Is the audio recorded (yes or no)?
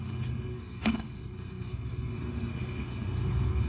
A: no